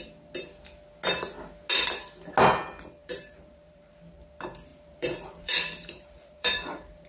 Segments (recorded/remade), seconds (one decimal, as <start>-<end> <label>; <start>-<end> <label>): 0.0-3.0 recorded; 3.0-4.2 remade; 4.2-4.7 recorded; 4.7-7.1 remade